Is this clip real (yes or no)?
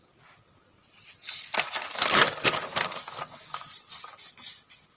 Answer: yes